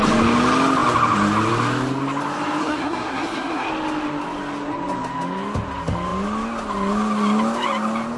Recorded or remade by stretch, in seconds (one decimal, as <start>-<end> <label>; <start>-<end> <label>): 0.0-2.6 recorded; 2.6-3.7 remade; 3.7-8.2 recorded